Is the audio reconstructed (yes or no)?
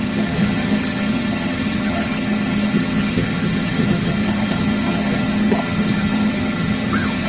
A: yes